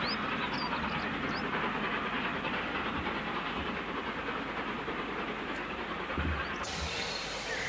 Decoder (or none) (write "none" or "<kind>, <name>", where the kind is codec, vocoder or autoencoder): none